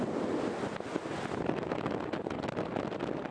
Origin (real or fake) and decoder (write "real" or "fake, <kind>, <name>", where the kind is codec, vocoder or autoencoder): real